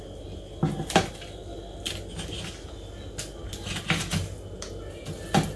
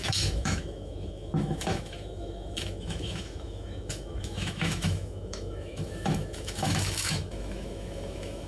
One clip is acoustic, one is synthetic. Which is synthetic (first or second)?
second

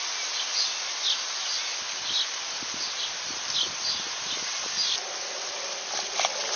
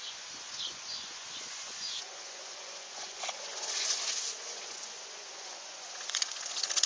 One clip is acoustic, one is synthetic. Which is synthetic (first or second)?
second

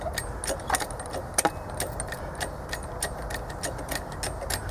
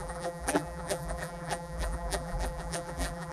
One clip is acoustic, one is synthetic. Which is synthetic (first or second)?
second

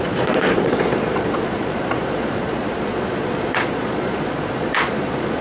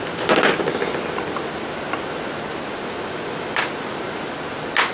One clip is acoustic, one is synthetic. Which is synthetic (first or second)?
first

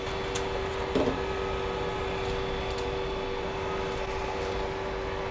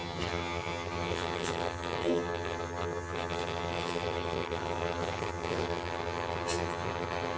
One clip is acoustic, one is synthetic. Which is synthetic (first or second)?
second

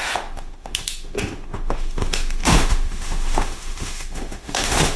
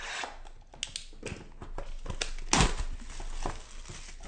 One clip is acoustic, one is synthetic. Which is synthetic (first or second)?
first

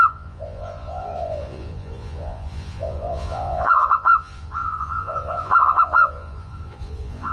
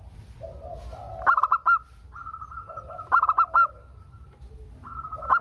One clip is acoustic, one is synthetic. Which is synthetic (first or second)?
first